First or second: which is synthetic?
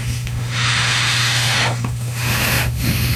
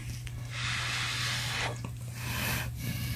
first